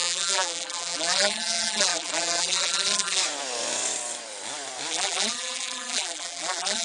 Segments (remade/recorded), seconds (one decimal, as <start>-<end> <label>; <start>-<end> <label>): 0.0-3.2 remade; 3.2-4.9 recorded; 4.9-6.8 remade